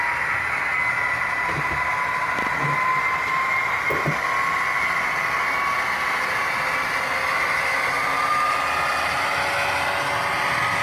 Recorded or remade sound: recorded